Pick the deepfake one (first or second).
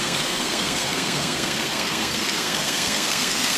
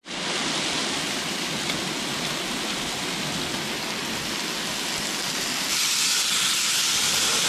first